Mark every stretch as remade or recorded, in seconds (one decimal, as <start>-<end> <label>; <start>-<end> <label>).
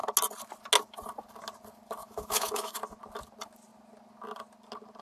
0.0-2.0 recorded; 2.0-2.8 remade; 2.8-5.0 recorded